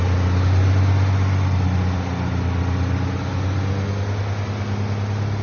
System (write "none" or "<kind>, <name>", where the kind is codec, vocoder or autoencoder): none